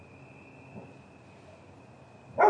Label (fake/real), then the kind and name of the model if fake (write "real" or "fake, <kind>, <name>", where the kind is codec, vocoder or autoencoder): real